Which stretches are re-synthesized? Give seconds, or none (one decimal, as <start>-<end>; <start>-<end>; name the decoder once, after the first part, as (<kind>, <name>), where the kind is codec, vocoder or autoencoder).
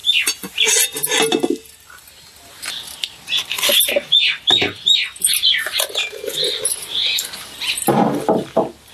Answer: none